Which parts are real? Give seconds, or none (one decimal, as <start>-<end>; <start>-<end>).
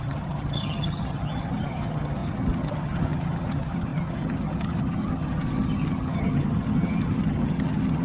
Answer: none